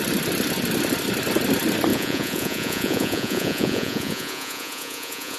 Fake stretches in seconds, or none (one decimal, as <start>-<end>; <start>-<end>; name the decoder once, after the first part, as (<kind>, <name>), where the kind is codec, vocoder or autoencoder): 1.9-5.4 (vocoder, Vocos)